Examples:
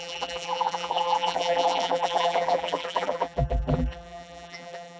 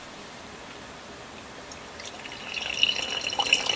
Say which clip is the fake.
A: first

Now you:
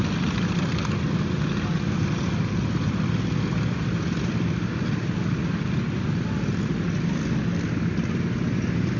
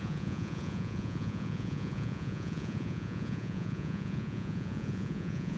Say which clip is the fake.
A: second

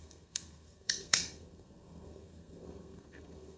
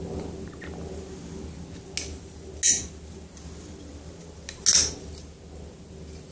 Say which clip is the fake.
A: first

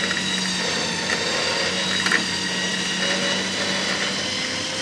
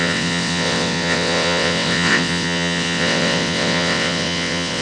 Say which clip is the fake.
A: second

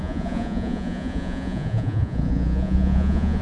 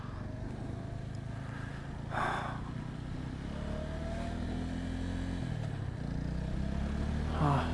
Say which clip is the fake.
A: first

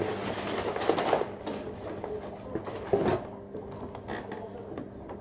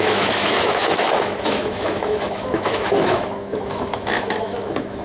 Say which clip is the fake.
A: second